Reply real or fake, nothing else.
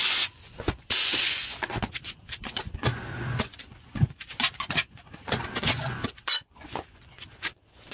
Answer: fake